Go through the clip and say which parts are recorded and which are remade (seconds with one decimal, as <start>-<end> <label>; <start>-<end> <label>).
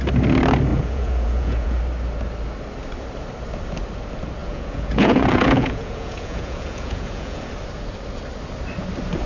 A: 0.0-0.7 recorded; 0.7-1.8 remade; 1.8-4.4 recorded; 4.4-7.5 remade; 7.5-9.3 recorded